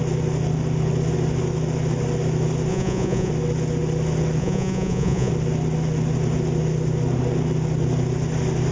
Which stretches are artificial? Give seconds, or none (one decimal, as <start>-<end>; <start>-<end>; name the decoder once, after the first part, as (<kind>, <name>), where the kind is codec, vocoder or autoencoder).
2.7-3.3 (vocoder, Vocos); 4.4-5.3